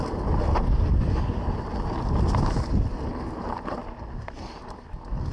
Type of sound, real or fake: real